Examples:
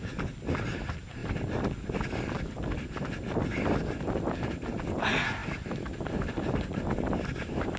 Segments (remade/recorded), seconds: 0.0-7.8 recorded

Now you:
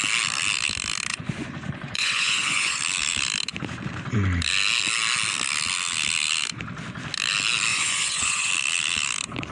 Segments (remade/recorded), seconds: 0.0-1.1 recorded; 1.1-2.8 remade; 2.8-7.7 recorded; 7.7-8.5 remade; 8.5-9.5 recorded

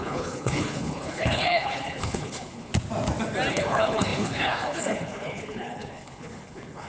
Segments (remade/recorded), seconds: 0.0-2.7 remade; 2.7-3.5 recorded; 3.5-6.9 remade

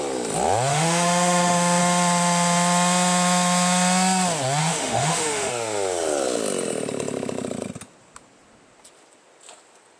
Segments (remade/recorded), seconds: 0.0-0.7 recorded; 0.7-1.8 remade; 1.8-4.6 recorded; 4.6-5.5 remade; 5.5-10.0 recorded

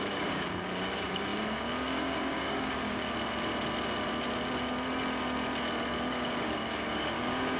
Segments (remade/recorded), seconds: 0.0-3.0 remade; 3.0-6.1 recorded; 6.1-7.6 remade

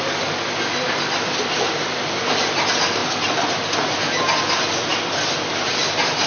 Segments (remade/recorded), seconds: 0.0-6.3 recorded